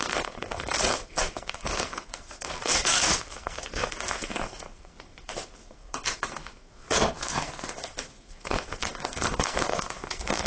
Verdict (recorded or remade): remade